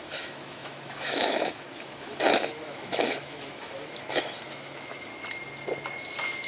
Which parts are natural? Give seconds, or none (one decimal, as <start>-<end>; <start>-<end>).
5.1-6.5